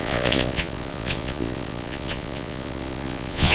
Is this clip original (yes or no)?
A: no